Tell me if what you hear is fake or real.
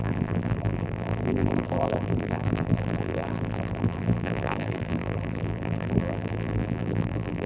fake